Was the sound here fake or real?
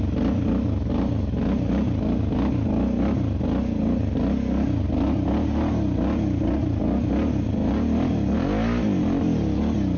real